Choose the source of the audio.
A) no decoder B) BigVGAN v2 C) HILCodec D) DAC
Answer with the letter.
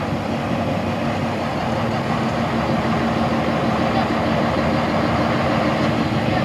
A